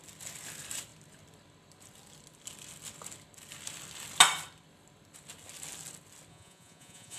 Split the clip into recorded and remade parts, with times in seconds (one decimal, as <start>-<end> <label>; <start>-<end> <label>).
0.0-6.3 recorded; 6.3-7.2 remade